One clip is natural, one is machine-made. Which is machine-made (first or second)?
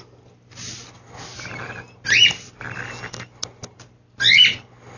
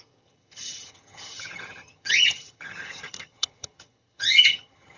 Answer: second